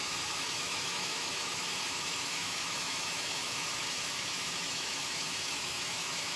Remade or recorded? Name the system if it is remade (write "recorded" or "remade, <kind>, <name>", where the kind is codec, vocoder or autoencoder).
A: remade, autoencoder, DAC-VAE